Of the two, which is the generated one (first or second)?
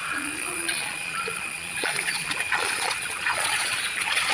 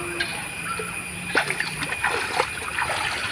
first